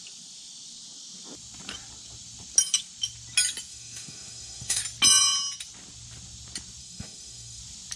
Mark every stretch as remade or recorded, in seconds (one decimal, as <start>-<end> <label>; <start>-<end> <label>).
0.0-3.7 recorded; 3.7-4.8 remade; 4.8-6.8 recorded; 6.8-7.6 remade; 7.6-8.0 recorded